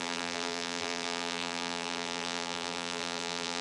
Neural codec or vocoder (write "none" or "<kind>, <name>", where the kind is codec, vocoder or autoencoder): vocoder, BigVGAN v2